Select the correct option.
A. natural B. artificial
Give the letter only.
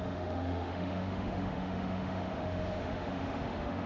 B